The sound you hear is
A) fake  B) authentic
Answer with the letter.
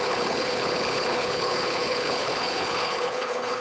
A